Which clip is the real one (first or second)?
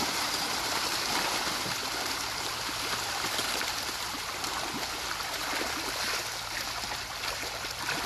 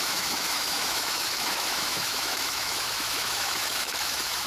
first